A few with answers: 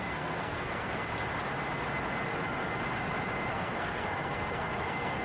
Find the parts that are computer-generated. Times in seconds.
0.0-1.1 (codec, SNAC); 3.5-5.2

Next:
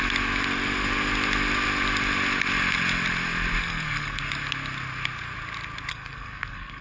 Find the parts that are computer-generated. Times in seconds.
3.6-4.2 (codec, SNAC); 5.9-6.8